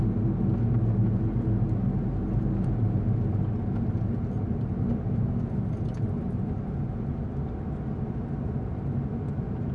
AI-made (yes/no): no